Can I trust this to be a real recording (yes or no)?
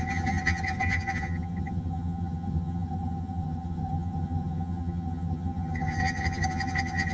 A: no